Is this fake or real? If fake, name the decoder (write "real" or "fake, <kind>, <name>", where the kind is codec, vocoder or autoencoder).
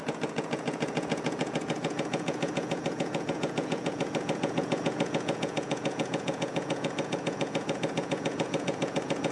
fake, vocoder, Vocos